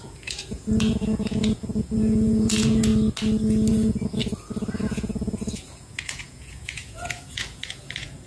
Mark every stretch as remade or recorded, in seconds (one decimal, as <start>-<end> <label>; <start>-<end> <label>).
0.0-2.9 remade; 2.9-3.7 recorded; 3.7-4.2 remade; 4.2-4.8 recorded; 4.8-8.3 remade